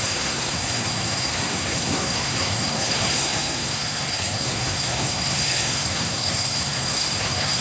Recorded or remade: remade